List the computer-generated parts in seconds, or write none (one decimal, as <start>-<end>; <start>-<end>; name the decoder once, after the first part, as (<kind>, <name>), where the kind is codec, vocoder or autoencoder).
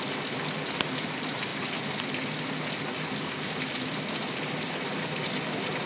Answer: none